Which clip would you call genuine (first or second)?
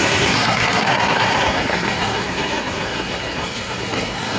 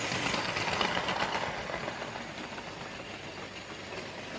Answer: second